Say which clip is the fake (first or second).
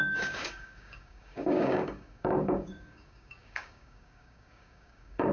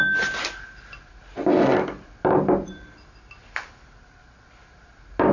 first